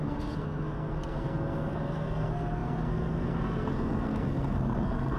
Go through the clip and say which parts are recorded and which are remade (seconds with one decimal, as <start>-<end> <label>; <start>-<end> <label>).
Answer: 0.0-5.2 remade